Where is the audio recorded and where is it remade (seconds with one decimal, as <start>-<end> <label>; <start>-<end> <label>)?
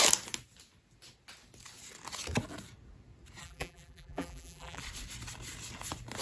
0.0-3.4 recorded; 3.4-4.8 remade; 4.8-6.2 recorded